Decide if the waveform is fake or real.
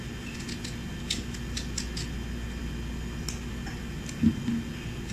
real